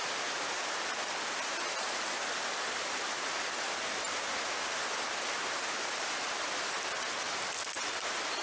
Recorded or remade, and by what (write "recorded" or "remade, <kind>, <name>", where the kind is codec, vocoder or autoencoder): recorded